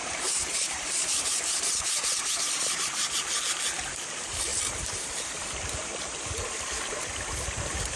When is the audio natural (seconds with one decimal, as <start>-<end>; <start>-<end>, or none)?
3.4-8.0